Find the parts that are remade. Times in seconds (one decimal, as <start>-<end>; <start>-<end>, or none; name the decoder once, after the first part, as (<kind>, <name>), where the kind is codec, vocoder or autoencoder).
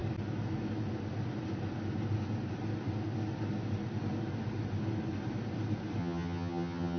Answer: 6.0-7.0 (vocoder, HiFi-GAN)